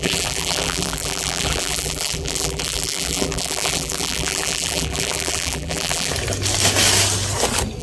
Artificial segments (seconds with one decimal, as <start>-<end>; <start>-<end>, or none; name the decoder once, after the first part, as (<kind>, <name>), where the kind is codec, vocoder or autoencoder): 0.0-6.1 (vocoder, BigVGAN v2)